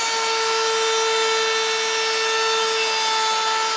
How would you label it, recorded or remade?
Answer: recorded